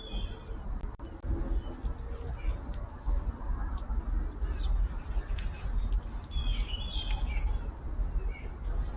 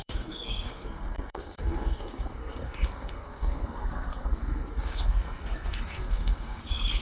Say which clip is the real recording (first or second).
first